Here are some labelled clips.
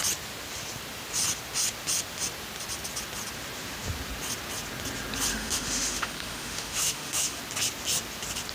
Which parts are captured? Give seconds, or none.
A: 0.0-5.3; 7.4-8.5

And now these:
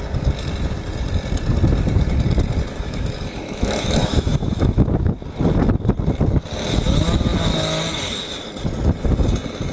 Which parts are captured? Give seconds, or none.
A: 0.0-2.7; 5.0-9.7

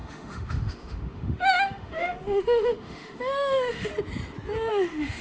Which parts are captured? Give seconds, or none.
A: 3.9-4.7

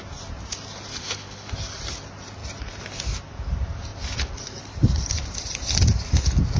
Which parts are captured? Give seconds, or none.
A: 0.0-1.0; 1.5-6.6

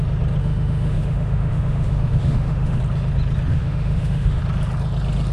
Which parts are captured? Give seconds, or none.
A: 0.0-0.4; 2.8-3.5; 4.4-5.3

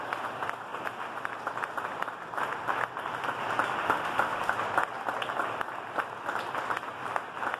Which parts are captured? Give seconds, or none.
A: 0.0-3.8; 4.5-7.6